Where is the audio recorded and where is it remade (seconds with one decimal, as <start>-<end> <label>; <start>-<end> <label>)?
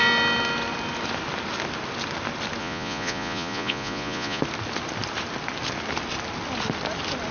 0.0-2.6 recorded; 2.6-4.4 remade; 4.4-7.3 recorded